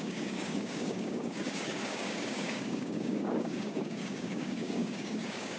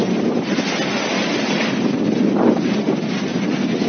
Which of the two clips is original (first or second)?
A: second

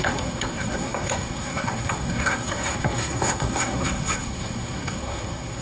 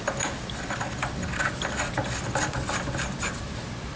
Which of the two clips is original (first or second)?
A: second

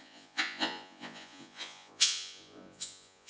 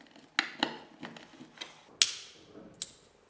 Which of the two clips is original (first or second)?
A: second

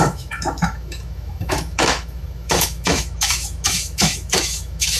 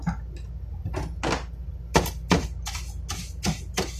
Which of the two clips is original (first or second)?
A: second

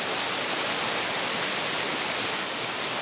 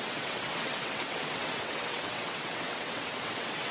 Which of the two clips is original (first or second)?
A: first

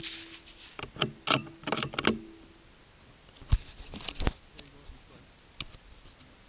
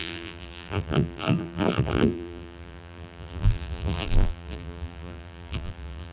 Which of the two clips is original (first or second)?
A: first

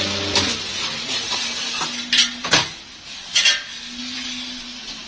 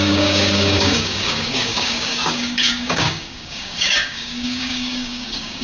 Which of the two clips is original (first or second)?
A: first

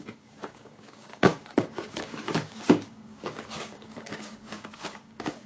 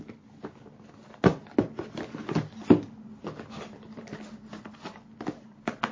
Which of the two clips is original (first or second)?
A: second